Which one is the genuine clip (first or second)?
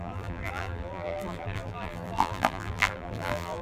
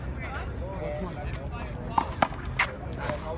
second